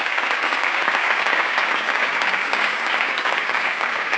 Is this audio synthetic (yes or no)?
yes